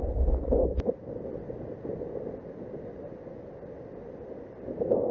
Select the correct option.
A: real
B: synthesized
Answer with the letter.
A